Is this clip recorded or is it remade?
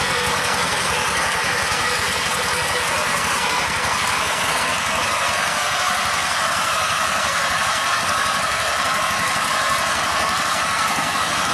remade